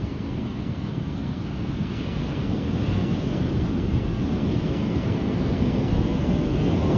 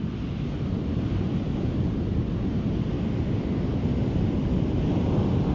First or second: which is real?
second